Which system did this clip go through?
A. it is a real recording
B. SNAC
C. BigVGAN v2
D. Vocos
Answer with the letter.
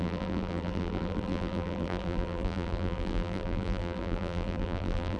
C